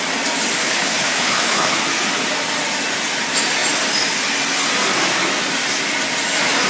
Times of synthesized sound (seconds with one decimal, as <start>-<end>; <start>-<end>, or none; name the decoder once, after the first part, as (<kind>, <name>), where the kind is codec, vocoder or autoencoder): 0.6-1.8 (codec, HILCodec)